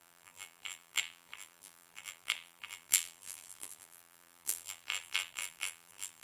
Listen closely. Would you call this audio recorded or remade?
remade